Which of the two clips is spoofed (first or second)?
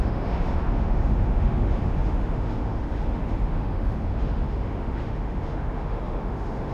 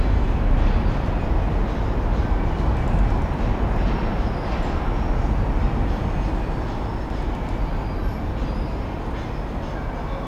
first